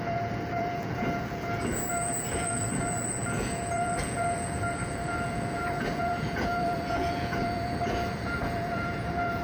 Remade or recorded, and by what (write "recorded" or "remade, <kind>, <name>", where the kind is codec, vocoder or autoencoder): remade, vocoder, Vocos